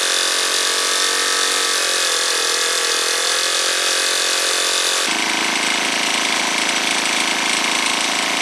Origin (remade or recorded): recorded